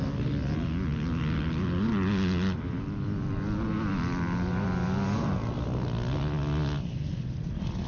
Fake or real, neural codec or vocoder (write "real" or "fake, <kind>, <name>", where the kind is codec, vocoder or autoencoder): real